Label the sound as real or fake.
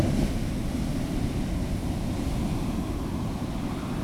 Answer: real